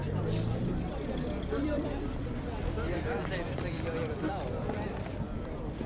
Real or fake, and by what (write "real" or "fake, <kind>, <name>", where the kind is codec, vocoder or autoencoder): real